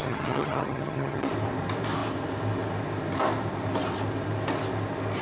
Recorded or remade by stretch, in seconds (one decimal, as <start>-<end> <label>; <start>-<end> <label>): 0.0-1.3 remade; 1.3-5.2 recorded